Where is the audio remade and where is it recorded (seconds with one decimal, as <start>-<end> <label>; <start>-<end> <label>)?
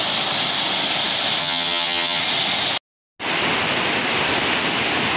0.0-1.4 recorded; 1.4-2.2 remade; 2.2-5.2 recorded